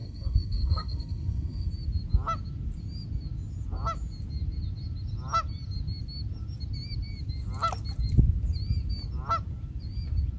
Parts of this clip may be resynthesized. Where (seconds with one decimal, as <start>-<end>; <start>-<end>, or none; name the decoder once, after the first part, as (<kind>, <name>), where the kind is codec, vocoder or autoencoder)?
0.0-1.7 (codec, SNAC)